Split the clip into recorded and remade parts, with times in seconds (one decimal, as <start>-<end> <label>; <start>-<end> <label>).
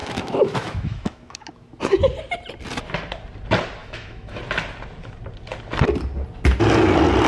0.0-1.8 remade; 1.8-3.8 recorded; 3.8-4.4 remade; 4.4-7.3 recorded